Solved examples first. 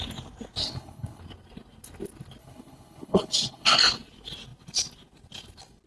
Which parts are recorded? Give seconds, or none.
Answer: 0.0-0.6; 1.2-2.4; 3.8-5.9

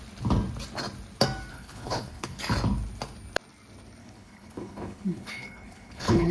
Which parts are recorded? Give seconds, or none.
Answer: 0.0-1.5; 2.4-4.0